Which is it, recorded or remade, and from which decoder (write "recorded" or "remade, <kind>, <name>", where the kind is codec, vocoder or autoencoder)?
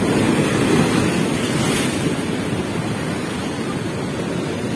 recorded